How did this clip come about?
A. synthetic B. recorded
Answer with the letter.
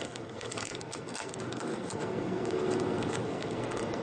A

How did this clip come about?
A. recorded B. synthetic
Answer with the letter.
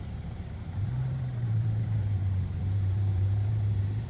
B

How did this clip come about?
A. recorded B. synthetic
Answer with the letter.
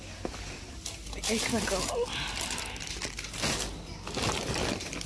A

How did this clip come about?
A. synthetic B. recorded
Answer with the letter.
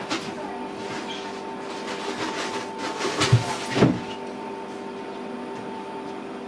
B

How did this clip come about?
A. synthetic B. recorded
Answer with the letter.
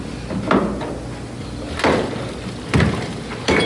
B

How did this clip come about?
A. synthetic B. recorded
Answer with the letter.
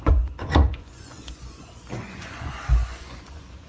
A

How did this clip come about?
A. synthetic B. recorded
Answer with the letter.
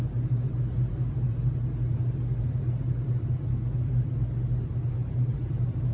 B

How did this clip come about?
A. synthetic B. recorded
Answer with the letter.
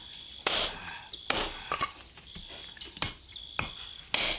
B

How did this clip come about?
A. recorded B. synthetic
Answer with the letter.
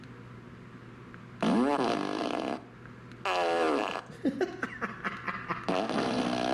A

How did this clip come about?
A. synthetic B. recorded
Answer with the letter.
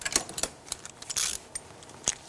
A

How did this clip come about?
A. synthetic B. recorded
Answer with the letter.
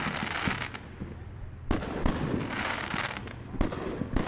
B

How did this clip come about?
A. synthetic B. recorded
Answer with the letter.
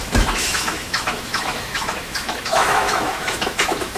A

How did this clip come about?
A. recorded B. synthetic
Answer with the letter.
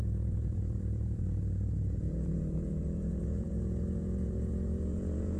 B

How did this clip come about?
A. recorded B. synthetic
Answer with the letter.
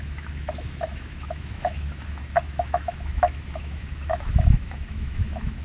B